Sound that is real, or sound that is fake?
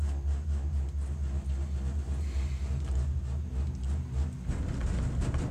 real